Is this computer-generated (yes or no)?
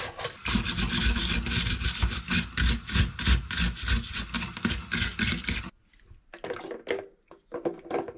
no